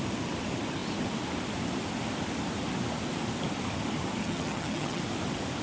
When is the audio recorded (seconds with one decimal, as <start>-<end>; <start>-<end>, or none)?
0.0-4.2; 5.0-5.6